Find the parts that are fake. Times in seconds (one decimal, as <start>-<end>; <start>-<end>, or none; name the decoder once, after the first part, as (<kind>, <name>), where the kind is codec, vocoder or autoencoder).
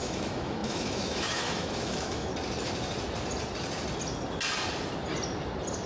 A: 0.0-2.3 (autoencoder, DAC-VAE)